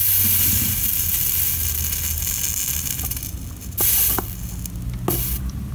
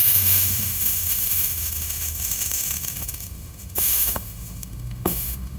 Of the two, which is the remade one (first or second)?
second